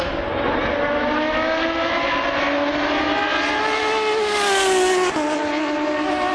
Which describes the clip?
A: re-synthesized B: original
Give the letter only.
B